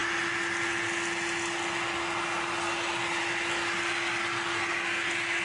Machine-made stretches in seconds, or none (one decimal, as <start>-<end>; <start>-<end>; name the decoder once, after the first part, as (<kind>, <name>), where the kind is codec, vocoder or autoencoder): none